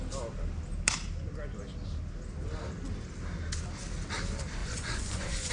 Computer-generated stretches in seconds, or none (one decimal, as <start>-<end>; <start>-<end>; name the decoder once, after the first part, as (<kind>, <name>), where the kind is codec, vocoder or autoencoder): 4.6-5.5 (vocoder, Vocos)